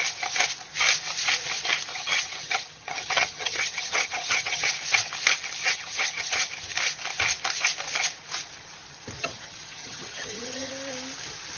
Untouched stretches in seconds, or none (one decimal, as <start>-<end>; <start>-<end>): 0.0-1.9; 4.7-5.6; 6.5-9.2; 10.7-11.6